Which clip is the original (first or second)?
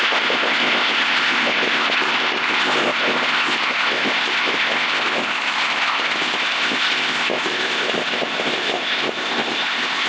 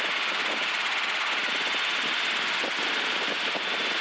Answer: second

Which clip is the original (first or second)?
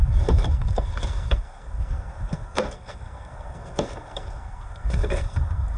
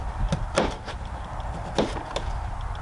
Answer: second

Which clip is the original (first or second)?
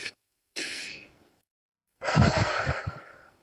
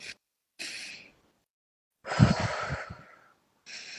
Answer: second